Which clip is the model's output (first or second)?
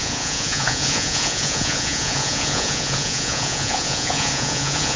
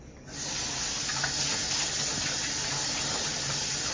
first